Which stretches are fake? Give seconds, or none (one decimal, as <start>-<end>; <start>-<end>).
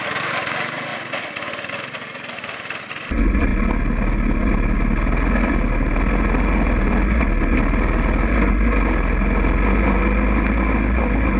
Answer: none